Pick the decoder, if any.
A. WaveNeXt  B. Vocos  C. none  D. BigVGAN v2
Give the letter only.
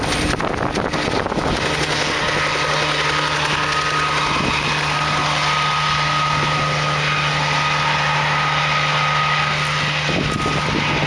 C